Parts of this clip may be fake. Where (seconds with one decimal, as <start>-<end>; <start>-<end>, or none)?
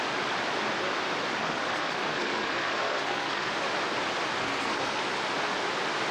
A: 1.4-3.5; 4.4-5.0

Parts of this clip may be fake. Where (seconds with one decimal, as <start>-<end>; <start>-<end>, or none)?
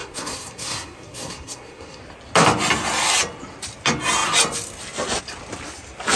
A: 0.0-2.0